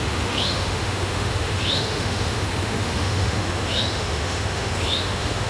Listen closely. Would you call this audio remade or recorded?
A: remade